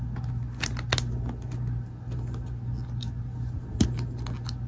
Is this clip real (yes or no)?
yes